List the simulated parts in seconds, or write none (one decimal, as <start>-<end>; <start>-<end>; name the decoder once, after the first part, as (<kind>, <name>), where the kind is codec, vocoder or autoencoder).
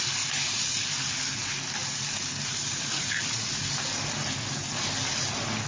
none